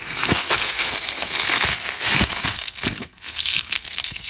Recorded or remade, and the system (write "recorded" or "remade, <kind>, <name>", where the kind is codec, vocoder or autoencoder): remade, codec, SNAC